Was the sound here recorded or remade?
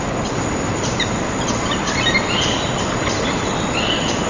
recorded